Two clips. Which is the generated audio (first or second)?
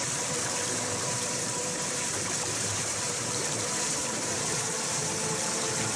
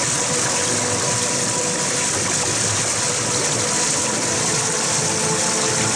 first